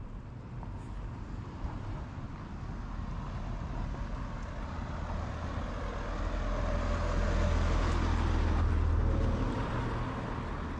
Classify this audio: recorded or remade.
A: recorded